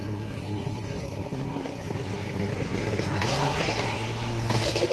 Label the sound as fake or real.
fake